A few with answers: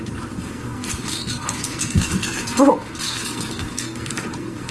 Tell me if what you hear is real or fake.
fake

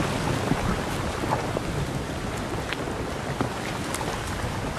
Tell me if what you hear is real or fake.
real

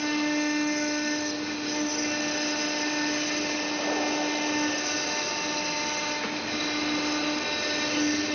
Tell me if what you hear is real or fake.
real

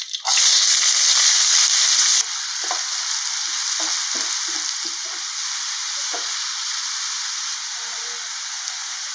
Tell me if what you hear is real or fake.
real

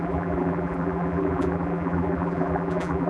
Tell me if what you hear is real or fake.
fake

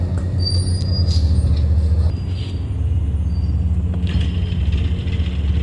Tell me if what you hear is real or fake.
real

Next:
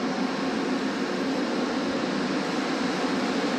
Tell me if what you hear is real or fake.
real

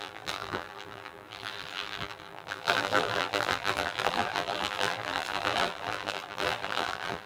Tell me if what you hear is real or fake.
fake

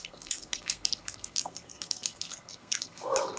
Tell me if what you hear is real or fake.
fake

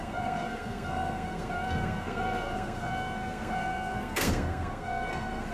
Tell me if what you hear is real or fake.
fake